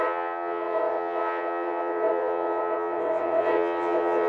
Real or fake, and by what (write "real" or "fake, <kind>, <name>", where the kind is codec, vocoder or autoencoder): fake, vocoder, WaveNeXt